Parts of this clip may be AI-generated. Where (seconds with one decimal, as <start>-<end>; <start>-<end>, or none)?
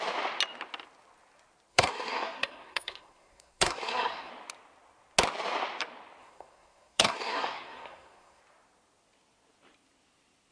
1.7-4.3; 6.2-8.4